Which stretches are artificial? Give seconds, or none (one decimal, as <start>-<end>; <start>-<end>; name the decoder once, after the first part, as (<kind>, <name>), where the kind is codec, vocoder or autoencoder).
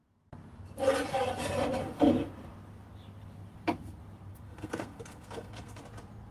4.3-5.8 (codec, SNAC)